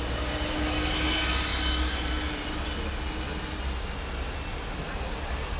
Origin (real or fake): real